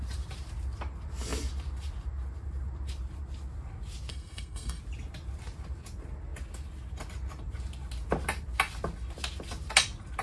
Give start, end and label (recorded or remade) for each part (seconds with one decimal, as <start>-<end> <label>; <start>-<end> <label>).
0.0-4.1 recorded; 4.1-4.8 remade; 4.8-10.2 recorded